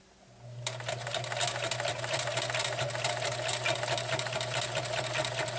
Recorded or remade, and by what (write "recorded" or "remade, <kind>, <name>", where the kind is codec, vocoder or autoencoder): recorded